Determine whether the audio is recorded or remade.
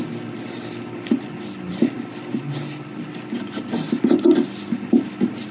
recorded